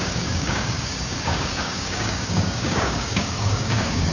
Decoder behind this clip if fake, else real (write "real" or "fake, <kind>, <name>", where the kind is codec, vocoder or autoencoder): fake, codec, DAC